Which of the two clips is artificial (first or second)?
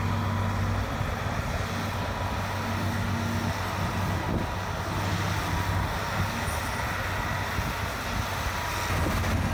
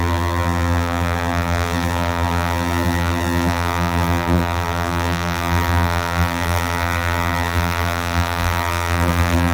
second